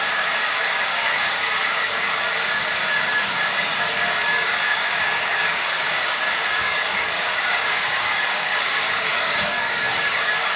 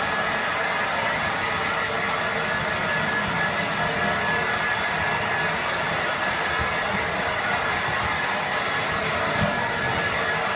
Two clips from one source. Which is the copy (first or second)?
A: first